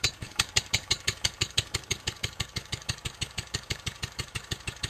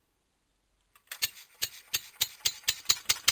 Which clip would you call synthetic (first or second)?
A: first